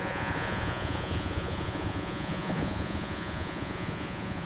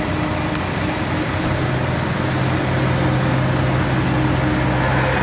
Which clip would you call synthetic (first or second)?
first